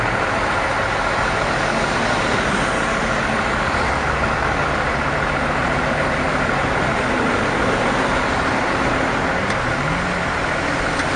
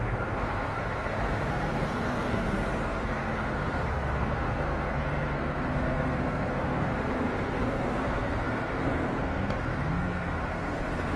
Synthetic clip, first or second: second